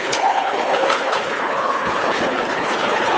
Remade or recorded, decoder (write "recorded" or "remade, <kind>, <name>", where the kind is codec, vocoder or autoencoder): remade, codec, HILCodec